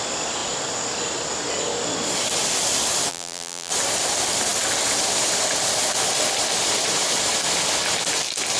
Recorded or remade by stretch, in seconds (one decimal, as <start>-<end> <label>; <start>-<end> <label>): 0.0-3.1 recorded; 3.1-3.7 remade; 3.7-8.6 recorded